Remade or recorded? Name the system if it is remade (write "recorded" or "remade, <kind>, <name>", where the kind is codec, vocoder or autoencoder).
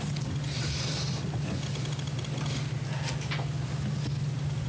recorded